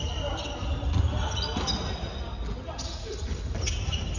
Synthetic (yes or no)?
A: no